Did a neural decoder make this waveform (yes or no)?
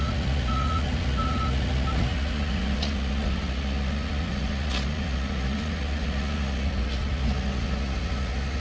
yes